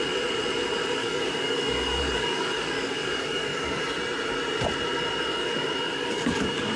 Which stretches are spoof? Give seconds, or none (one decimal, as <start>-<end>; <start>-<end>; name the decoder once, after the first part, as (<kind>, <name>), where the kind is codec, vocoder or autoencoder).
1.0-3.8 (codec, DAC); 5.3-6.8